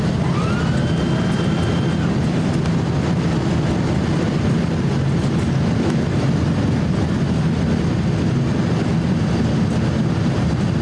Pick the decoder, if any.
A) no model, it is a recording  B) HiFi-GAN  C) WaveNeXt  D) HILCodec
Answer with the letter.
A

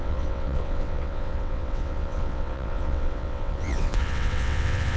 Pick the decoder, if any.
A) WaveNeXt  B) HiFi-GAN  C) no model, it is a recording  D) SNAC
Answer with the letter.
A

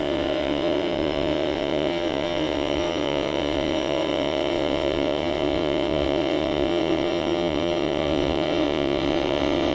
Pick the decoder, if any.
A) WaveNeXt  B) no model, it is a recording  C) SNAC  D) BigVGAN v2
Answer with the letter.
A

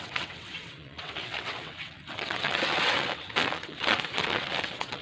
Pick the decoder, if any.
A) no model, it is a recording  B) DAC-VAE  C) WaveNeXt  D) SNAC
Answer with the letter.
C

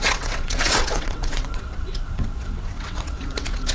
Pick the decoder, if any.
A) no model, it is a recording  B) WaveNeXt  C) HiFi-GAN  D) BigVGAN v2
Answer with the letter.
B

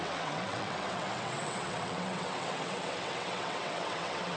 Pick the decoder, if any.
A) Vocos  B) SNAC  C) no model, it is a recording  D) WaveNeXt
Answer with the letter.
D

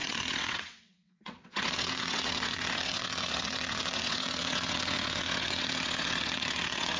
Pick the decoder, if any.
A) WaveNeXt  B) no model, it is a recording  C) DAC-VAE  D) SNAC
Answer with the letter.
A